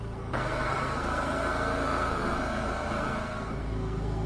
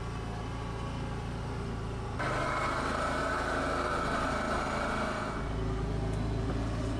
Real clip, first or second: second